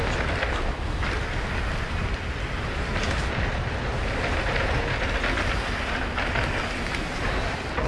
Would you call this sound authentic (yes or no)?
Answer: yes